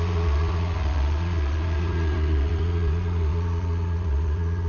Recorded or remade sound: remade